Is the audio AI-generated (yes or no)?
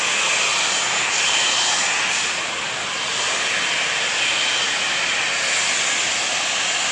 no